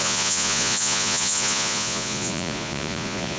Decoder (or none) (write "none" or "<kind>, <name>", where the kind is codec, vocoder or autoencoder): vocoder, Vocos